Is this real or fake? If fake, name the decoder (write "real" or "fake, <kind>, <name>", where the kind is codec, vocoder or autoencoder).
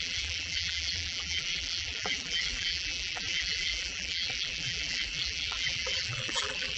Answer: fake, vocoder, BigVGAN v2